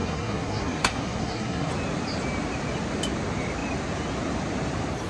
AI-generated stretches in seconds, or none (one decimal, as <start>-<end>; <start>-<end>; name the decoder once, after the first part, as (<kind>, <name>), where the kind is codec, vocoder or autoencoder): 0.0-1.7 (codec, SNAC)